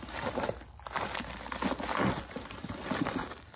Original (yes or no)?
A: yes